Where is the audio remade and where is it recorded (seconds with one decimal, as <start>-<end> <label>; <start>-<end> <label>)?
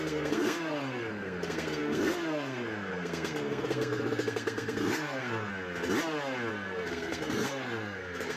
0.0-5.5 remade; 5.5-6.5 recorded; 6.5-8.4 remade